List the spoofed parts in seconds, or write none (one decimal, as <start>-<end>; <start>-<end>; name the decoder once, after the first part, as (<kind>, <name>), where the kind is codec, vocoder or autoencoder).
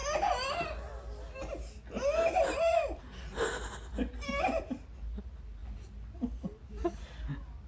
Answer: none